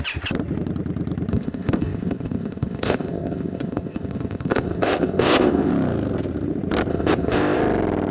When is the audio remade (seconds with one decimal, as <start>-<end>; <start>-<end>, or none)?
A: 1.3-5.7; 6.9-7.6